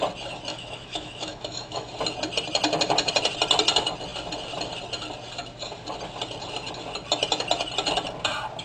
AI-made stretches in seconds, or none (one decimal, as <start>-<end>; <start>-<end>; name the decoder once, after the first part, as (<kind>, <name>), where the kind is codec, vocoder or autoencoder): 0.5-1.9 (autoencoder, DAC-VAE)